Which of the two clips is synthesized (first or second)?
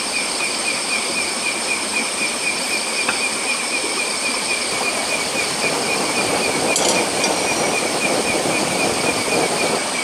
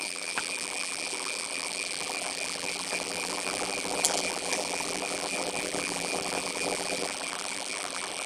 second